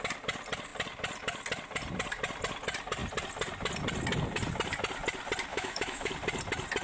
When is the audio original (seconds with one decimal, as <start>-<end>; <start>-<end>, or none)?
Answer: 0.0-5.5; 6.1-6.8